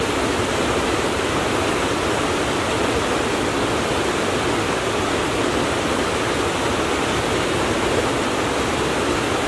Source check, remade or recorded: recorded